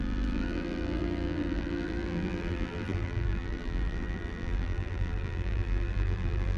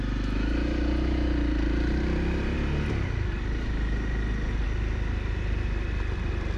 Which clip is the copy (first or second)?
first